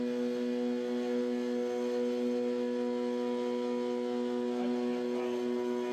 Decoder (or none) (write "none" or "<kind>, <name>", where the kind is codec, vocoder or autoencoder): none